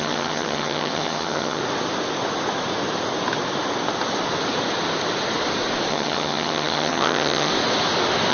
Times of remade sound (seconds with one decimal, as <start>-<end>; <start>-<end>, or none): 0.0-1.6; 5.9-7.5